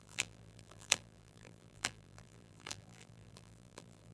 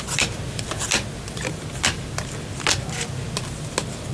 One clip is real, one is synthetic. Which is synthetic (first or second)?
first